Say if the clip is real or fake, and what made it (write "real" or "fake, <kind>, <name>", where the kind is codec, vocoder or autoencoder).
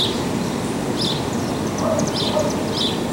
real